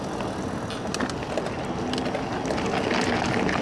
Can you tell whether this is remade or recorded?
recorded